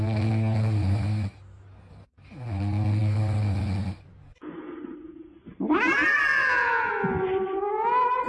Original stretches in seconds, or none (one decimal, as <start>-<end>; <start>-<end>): 0.0-6.3; 6.9-8.3